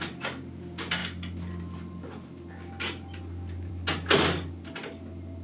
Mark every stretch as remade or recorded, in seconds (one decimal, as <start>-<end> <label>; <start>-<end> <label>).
0.0-5.4 recorded